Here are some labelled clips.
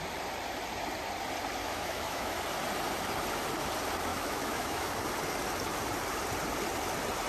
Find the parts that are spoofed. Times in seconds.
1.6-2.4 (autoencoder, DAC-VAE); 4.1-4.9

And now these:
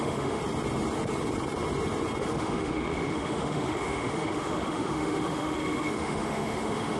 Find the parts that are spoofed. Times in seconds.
0.0-0.4 (autoencoder, DAC-VAE); 2.3-7.0

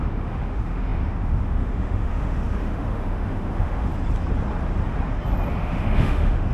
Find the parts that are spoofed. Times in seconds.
0.0-3.9 (autoencoder, DAC-VAE); 5.5-6.5

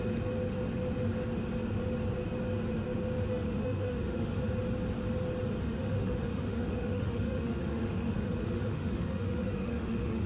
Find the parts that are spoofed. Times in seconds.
3.3-4.5 (autoencoder, DAC-VAE); 5.6-10.3

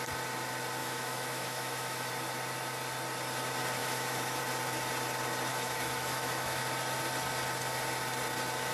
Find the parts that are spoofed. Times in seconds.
0.8-2.1 (autoencoder, DAC-VAE); 3.8-4.4; 5.5-6.6

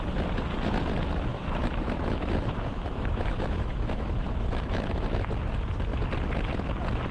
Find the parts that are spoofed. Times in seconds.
1.3-5.3 (autoencoder, DAC-VAE)

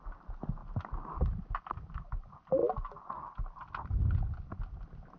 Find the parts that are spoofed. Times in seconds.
none

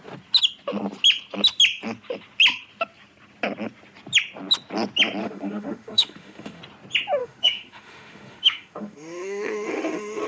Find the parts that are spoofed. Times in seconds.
5.2-6.6 (autoencoder, DAC-VAE); 7.2-10.3